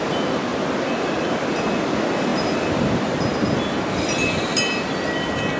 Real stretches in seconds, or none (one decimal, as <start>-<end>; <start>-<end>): 0.0-5.6